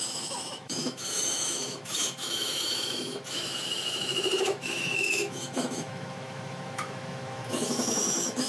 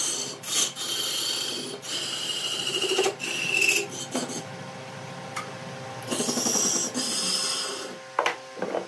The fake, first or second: first